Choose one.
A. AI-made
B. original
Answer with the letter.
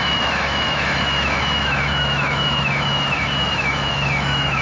A